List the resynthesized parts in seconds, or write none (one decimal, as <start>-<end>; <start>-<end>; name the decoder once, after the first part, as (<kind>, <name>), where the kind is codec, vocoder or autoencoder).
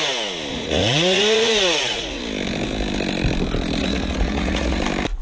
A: 0.5-2.2 (vocoder, Vocos); 3.8-4.8